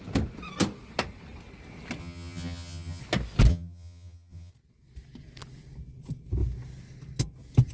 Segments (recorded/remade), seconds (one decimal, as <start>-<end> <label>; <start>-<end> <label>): 0.0-2.0 recorded; 2.0-3.0 remade; 3.0-3.5 recorded; 3.5-4.5 remade; 4.5-7.7 recorded